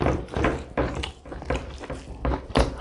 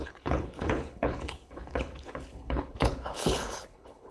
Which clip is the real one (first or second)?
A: first